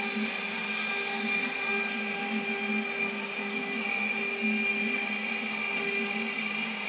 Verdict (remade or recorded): recorded